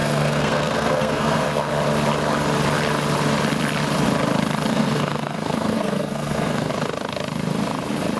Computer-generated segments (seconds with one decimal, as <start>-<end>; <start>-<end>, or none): 0.0-1.7; 4.7-6.7